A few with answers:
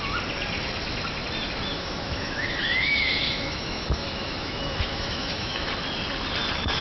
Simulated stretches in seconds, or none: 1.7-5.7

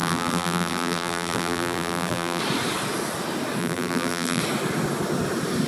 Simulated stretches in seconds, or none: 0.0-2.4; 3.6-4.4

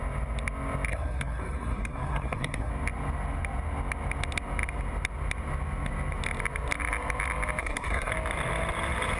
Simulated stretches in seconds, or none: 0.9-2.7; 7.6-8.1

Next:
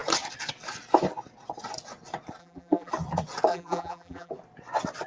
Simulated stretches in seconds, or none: 2.4-2.9; 3.5-4.3

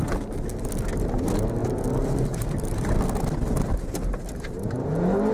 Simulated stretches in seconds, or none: none

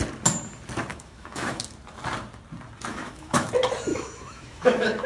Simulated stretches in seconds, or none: 0.9-1.6; 2.9-3.5; 3.9-5.1